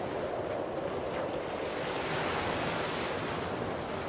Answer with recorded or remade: recorded